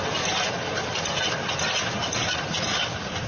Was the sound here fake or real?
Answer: real